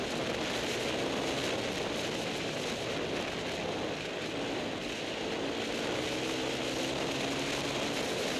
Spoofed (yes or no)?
no